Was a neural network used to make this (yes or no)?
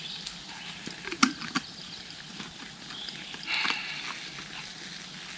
no